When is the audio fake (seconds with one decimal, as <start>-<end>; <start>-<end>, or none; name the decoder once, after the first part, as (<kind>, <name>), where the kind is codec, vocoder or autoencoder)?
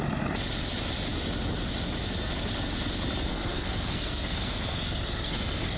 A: 3.3-5.8 (codec, SNAC)